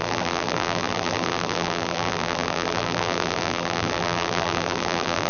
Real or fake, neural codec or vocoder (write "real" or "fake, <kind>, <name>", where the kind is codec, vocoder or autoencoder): fake, vocoder, BigVGAN v2